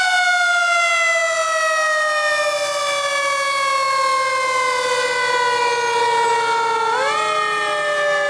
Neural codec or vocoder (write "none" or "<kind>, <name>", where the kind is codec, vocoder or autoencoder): none